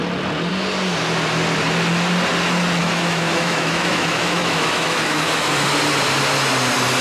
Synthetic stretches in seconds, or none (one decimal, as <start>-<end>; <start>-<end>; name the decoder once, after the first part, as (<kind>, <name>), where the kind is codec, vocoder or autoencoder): 2.8-5.5 (autoencoder, DAC-VAE)